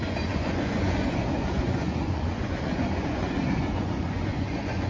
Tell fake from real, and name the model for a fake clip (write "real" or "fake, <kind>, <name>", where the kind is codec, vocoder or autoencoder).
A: fake, vocoder, Vocos